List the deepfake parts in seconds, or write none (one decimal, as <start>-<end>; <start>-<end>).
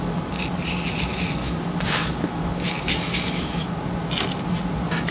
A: 1.4-3.8